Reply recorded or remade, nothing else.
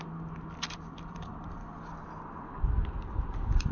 recorded